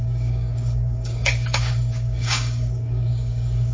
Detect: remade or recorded remade